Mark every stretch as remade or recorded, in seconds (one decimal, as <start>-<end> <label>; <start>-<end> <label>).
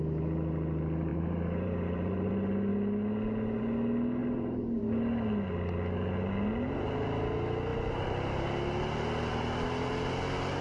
0.0-1.1 recorded; 1.1-2.3 remade; 2.3-4.2 recorded; 4.2-4.8 remade; 4.8-10.6 recorded